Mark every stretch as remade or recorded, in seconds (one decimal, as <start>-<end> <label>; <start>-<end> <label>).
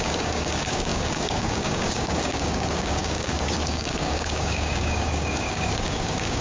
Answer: 0.0-6.4 remade